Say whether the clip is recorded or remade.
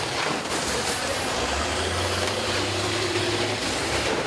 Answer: remade